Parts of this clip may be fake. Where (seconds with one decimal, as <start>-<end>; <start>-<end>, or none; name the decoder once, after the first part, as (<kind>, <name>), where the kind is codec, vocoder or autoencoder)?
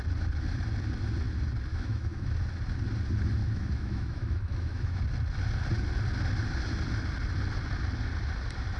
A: 1.7-2.3 (autoencoder, DAC-VAE); 3.4-5.0